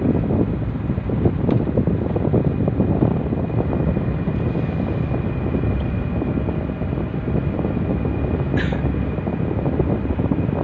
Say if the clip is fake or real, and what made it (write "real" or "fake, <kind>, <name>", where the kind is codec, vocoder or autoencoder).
real